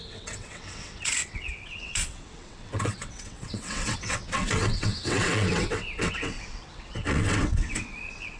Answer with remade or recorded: remade